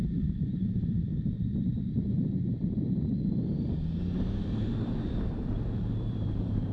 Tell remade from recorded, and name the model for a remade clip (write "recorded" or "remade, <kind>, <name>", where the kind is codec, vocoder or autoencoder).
remade, vocoder, BigVGAN v2